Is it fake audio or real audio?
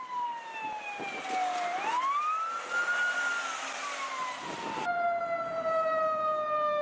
real